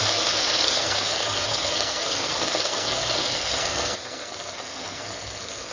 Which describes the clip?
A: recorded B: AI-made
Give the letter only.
B